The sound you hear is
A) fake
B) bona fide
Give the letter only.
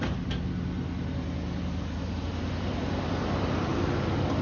B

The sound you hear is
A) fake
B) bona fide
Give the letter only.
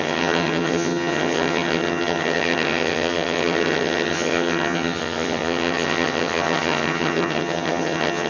A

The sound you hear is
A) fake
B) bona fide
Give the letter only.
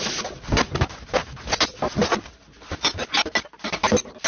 B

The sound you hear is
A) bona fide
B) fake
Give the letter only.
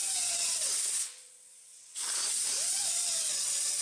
B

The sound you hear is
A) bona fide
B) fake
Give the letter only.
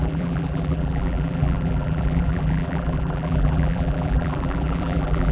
B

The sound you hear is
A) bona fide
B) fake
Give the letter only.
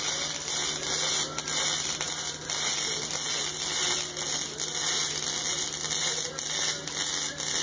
A